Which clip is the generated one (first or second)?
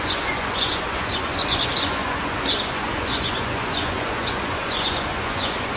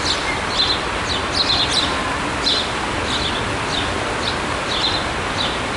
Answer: first